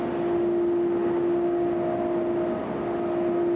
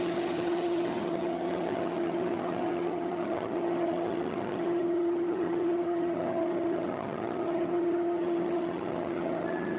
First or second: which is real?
first